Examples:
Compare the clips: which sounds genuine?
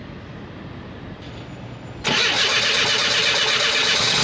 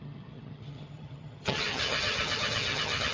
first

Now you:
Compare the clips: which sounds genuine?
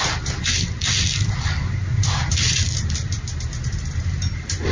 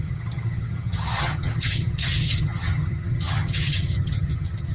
first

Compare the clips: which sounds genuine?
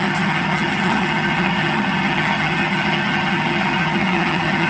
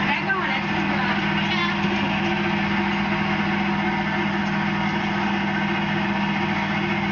second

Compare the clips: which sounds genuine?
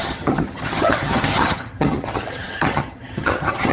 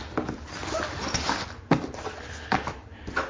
second